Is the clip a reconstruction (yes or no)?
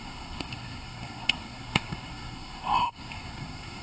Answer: yes